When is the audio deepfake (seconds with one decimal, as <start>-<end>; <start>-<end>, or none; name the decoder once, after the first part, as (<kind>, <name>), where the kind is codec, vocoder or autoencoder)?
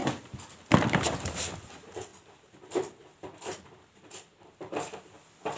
none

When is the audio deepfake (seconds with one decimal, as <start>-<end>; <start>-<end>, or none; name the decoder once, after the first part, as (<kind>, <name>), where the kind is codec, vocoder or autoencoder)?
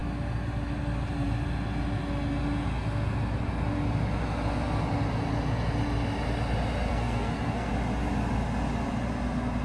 6.9-7.7 (codec, SNAC)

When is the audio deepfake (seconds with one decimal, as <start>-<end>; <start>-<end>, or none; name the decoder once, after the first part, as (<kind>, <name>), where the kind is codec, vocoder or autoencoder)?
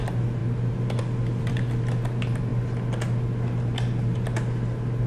none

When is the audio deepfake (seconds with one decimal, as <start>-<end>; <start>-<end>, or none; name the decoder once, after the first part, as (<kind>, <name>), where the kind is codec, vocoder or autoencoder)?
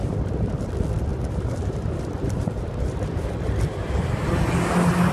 0.0-0.6 (vocoder, BigVGAN v2); 1.1-4.2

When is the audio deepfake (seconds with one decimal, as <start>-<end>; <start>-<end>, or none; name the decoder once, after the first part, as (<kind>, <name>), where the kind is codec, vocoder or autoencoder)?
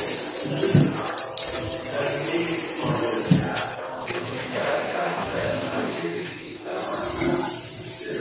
3.7-6.8 (codec, SNAC)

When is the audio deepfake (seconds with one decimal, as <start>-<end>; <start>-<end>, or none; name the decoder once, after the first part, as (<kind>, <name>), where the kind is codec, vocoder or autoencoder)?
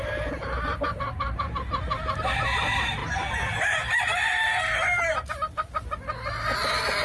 0.4-1.5 (vocoder, BigVGAN v2)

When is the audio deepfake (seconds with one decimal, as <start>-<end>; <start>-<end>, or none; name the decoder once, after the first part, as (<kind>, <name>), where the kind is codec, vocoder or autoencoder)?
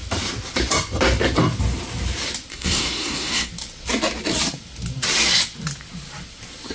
2.5-3.5 (codec, SNAC)